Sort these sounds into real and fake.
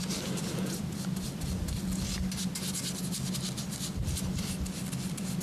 real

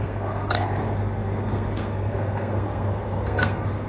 fake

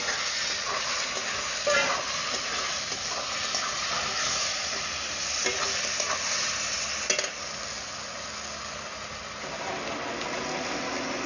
real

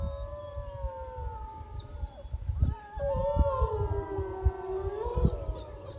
real